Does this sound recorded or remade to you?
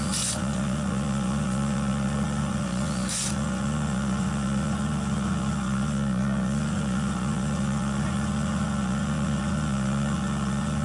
remade